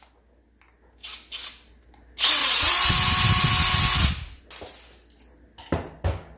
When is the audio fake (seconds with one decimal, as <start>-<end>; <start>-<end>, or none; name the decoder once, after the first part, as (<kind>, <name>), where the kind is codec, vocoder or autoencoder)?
2.4-2.9 (vocoder, WaveNeXt)